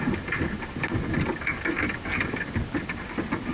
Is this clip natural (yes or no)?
yes